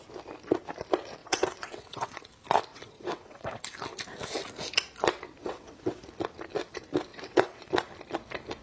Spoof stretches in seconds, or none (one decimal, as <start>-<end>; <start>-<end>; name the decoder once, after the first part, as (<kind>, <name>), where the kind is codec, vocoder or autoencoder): 1.2-2.2 (vocoder, WaveNeXt); 2.7-3.6; 5.4-6.0; 7.1-7.7